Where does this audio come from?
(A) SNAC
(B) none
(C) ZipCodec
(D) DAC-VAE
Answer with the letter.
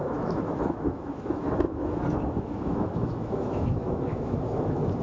D